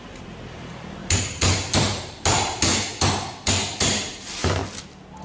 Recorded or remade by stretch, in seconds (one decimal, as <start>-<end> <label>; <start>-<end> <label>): 0.0-2.7 remade; 2.7-3.7 recorded; 3.7-4.6 remade; 4.6-5.2 recorded